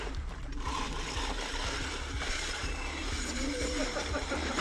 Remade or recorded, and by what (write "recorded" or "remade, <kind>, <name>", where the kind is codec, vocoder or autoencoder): remade, vocoder, BigVGAN v2